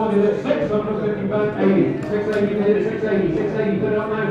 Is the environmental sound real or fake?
real